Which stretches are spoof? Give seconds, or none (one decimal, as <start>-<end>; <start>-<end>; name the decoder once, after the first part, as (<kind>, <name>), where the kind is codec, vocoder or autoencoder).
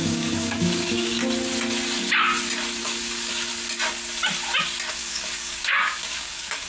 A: 0.0-1.2 (codec, DAC); 2.8-3.5; 4.9-6.7